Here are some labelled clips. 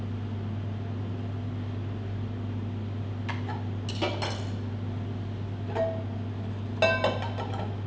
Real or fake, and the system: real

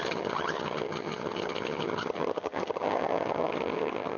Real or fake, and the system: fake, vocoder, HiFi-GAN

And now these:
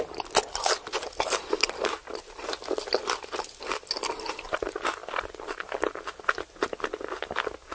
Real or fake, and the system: real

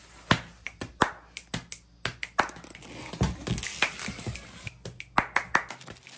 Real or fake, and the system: real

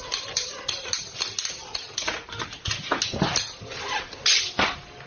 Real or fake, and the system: real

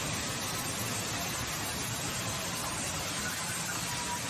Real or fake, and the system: real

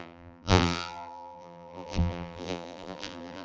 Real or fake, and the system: fake, vocoder, BigVGAN v2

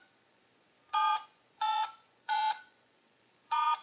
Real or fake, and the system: fake, vocoder, Vocos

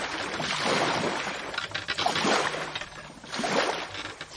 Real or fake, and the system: real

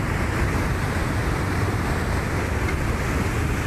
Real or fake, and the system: real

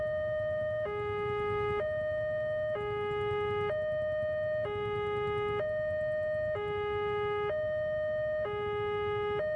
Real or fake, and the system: real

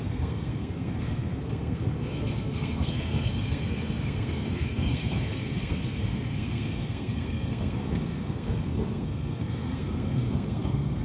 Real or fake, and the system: fake, codec, SNAC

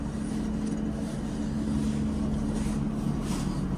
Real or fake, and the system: real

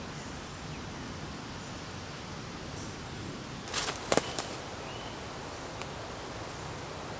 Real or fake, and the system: real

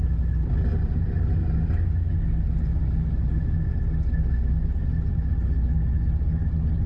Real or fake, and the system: real